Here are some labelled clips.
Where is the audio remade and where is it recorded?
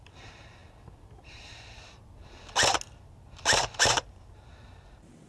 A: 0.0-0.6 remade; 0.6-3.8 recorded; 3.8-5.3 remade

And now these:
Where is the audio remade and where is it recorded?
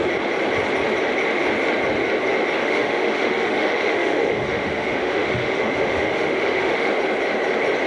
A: 0.0-2.6 recorded; 2.6-6.9 remade; 6.9-7.9 recorded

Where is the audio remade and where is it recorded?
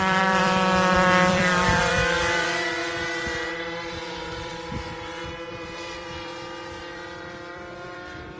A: 0.0-2.8 remade; 2.8-3.5 recorded; 3.5-4.5 remade; 4.5-5.5 recorded; 5.5-6.3 remade; 6.3-6.8 recorded; 6.8-8.4 remade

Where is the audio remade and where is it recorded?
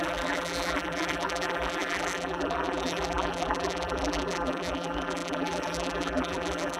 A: 0.0-6.8 remade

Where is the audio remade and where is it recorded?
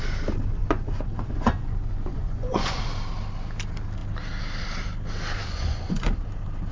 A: 0.0-0.6 recorded; 0.6-2.8 remade; 2.8-5.5 recorded; 5.5-6.1 remade; 6.1-6.7 recorded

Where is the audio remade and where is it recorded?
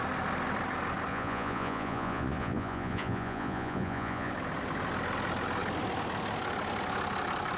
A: 0.0-1.1 recorded; 1.1-4.3 remade; 4.3-7.6 recorded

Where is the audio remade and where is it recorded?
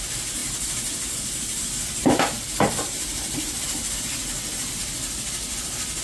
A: 0.0-0.4 recorded; 0.4-4.0 remade; 4.0-6.0 recorded